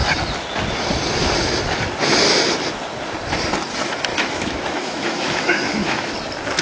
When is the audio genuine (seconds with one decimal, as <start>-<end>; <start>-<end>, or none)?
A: 0.0-4.1; 6.1-6.6